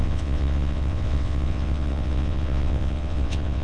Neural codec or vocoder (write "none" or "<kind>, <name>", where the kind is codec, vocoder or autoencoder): vocoder, WaveNeXt